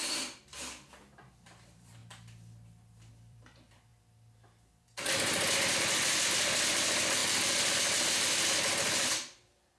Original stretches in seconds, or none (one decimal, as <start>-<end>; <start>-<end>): 2.0-3.1; 3.9-5.7; 7.2-9.1